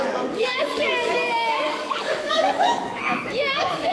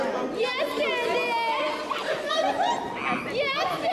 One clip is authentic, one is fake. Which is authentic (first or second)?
second